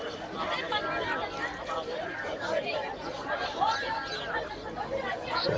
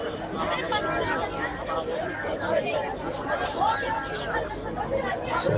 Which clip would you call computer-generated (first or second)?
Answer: first